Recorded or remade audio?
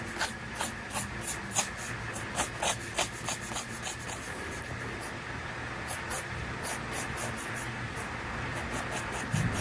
recorded